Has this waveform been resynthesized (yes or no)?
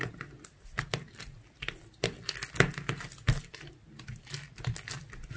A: no